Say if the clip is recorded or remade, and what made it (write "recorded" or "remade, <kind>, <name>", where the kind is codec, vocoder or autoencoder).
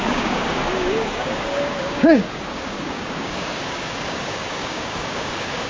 remade, codec, DAC